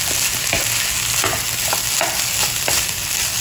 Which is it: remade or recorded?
recorded